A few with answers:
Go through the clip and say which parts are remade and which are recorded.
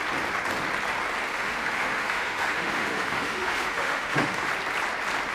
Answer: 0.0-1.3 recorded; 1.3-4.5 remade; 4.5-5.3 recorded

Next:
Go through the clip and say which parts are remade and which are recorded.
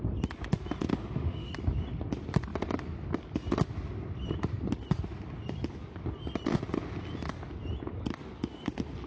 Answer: 0.0-0.8 recorded; 0.8-1.5 remade; 1.5-9.1 recorded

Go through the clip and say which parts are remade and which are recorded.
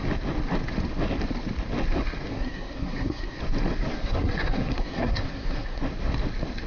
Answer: 0.0-2.3 recorded; 2.3-3.4 remade; 3.4-3.9 recorded; 3.9-5.8 remade; 5.8-6.7 recorded